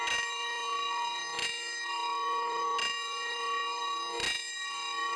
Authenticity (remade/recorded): recorded